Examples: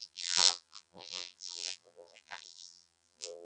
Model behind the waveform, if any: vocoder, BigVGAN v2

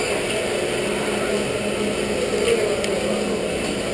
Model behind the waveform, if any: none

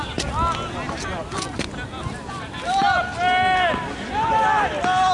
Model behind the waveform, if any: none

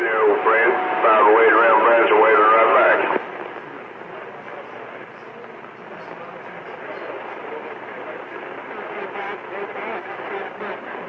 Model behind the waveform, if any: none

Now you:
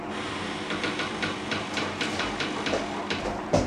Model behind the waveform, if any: vocoder, BigVGAN v2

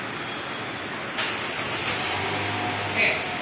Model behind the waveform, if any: none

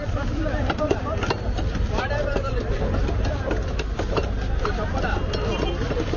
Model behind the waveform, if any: none